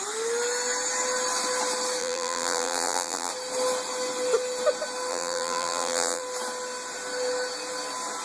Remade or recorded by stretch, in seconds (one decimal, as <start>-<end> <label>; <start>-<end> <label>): 0.0-2.0 recorded; 2.0-3.3 remade; 3.3-5.1 recorded; 5.1-6.2 remade; 6.2-8.2 recorded